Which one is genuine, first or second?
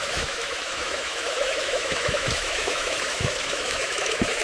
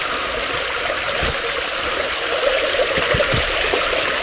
second